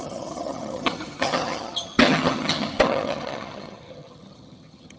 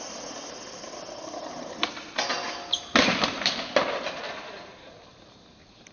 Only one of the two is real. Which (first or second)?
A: second